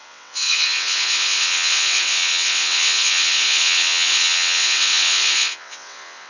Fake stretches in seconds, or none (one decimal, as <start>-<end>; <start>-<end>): 0.0-6.3